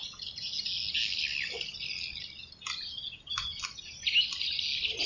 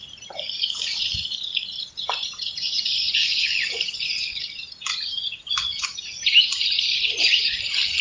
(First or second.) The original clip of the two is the first